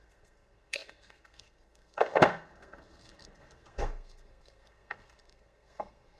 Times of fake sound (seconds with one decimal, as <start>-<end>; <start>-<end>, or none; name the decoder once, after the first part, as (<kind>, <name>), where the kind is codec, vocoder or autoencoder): 0.0-6.2 (codec, SNAC)